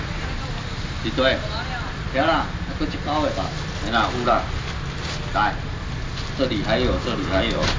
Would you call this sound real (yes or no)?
yes